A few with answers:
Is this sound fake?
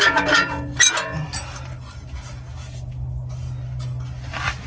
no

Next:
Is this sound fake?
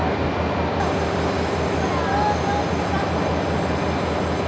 no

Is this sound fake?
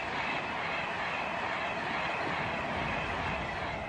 no